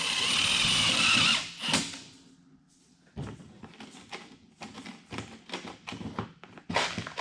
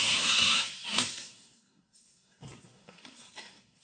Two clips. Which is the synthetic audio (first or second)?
second